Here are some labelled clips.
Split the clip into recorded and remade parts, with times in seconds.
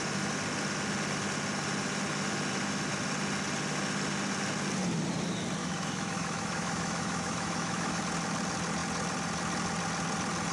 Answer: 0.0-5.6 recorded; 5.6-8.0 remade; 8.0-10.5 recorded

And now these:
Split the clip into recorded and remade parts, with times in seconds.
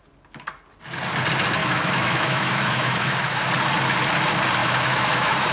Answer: 0.0-1.6 recorded; 1.6-3.5 remade; 3.5-4.6 recorded; 4.6-5.5 remade